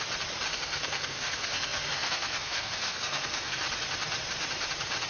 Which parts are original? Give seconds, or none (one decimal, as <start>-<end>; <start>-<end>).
0.0-0.5; 3.6-5.1